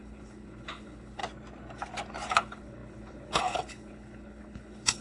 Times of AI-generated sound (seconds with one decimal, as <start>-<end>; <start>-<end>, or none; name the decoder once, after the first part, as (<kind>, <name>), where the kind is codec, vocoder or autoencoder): 0.0-1.2 (codec, HILCodec); 2.3-5.0